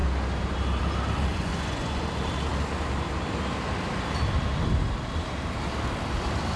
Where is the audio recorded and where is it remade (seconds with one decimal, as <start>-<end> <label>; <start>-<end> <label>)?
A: 0.0-1.3 recorded; 1.3-2.1 remade; 2.1-6.6 recorded